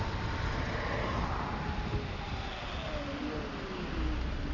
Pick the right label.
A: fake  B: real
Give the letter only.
B